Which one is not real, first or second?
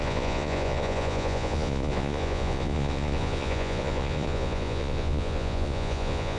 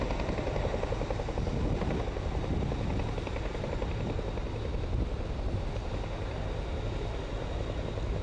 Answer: first